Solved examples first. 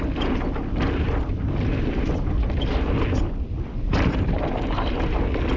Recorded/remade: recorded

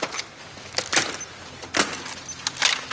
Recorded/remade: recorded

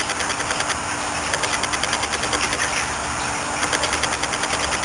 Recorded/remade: recorded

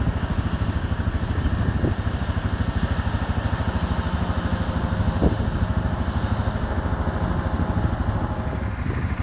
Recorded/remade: recorded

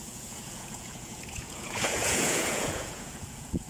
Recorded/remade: remade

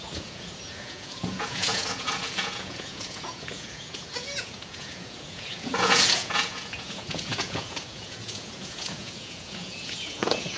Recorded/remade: remade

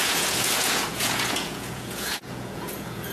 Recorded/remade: remade